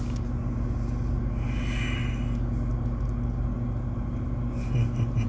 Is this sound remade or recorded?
recorded